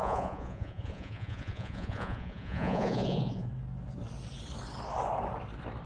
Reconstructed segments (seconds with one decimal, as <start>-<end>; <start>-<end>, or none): 0.0-3.5